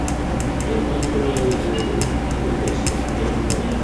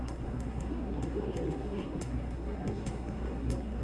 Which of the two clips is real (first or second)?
first